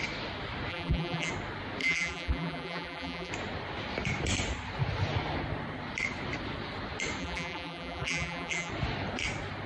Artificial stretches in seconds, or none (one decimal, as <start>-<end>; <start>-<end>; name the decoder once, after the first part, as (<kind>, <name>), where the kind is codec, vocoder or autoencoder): 0.7-1.3 (vocoder, BigVGAN v2); 1.8-3.3; 7.2-8.7